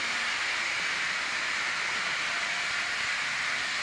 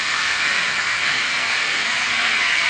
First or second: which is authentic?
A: first